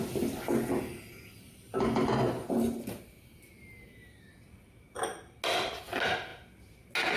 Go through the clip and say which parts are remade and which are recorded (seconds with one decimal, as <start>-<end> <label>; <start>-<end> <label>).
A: 0.0-7.2 recorded